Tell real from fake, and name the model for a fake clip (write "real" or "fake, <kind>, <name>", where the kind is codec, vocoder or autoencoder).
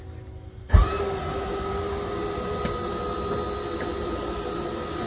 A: real